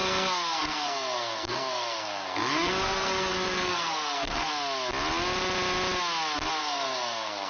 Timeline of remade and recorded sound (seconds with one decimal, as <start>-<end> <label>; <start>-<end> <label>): 0.0-4.5 remade; 4.5-6.6 recorded; 6.6-7.5 remade